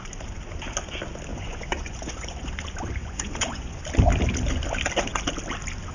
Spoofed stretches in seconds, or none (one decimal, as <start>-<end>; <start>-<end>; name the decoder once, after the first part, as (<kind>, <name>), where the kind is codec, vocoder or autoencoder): 1.3-2.5 (vocoder, Vocos); 3.0-3.8